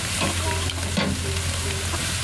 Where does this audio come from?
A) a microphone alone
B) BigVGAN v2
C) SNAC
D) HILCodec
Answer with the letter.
A